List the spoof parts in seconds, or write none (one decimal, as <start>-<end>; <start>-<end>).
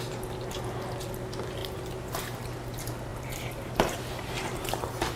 1.6-2.4; 3.1-4.3